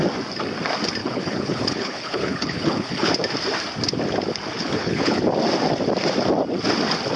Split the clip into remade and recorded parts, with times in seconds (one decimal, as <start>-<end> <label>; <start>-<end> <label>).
0.0-1.0 recorded; 1.0-3.1 remade; 3.1-4.5 recorded; 4.5-5.2 remade; 5.2-7.2 recorded